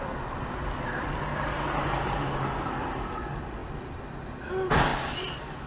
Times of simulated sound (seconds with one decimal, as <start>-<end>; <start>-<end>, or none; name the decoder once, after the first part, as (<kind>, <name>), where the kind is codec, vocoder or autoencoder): none